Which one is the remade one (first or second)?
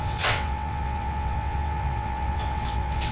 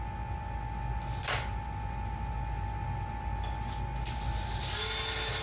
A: first